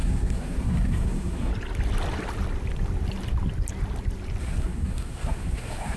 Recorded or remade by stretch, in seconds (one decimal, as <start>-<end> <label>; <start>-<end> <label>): 0.0-1.5 remade; 1.5-4.4 recorded; 4.4-6.0 remade